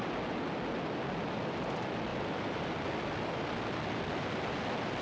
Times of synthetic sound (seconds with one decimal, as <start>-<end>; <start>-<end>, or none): none